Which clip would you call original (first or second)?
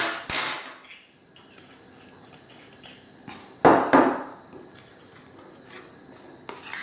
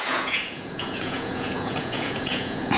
first